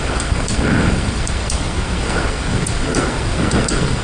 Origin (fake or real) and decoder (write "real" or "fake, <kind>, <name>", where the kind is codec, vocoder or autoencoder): fake, codec, SNAC